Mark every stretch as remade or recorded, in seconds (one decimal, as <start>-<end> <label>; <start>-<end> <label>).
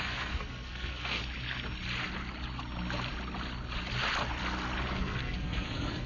0.0-1.2 remade; 1.2-4.9 recorded; 4.9-6.1 remade